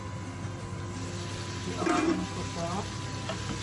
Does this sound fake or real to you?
real